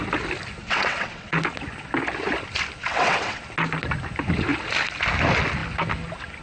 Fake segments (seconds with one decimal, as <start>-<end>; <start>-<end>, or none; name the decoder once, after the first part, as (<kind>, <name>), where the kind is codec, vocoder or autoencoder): 0.6-1.3 (vocoder, WaveNeXt); 2.8-3.4